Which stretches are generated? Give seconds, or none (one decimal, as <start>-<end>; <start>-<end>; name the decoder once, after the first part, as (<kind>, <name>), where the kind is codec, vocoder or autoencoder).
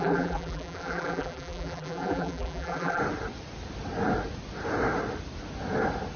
0.0-3.0 (vocoder, BigVGAN v2)